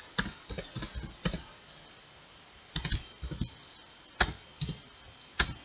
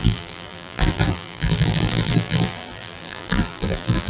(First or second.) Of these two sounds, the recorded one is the first